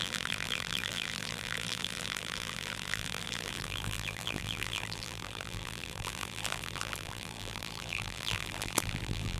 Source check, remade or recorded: remade